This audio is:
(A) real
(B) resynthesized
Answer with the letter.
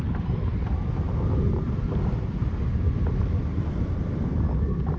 A